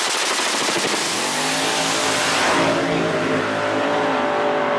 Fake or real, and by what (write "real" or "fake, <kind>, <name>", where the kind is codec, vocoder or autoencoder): real